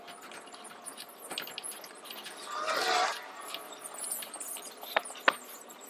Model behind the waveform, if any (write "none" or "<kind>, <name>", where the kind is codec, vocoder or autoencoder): none